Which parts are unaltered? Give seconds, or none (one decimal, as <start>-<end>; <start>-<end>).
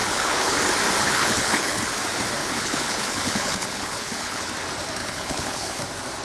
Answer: 0.6-1.0; 1.8-2.4; 4.5-5.0; 5.8-6.2